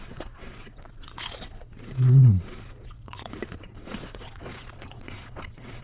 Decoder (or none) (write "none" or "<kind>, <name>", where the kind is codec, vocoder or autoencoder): vocoder, Vocos